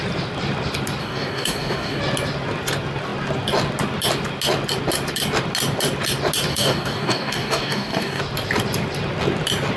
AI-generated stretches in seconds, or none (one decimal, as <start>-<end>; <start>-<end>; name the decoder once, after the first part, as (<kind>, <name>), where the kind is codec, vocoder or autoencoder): 1.0-2.0 (codec, DAC); 6.5-8.2